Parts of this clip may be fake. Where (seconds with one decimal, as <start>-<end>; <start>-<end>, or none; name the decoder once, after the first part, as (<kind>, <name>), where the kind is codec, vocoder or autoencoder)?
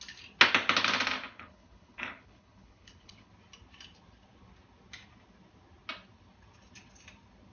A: 1.3-3.3 (codec, HILCodec)